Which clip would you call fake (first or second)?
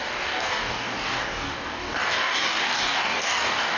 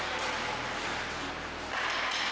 first